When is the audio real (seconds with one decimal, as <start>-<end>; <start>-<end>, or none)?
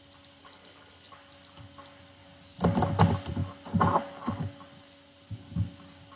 0.0-0.4; 1.1-6.2